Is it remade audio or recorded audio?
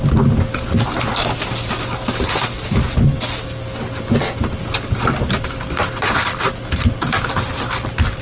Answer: recorded